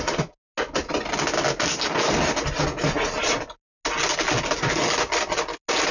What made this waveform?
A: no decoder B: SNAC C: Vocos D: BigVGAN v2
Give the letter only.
A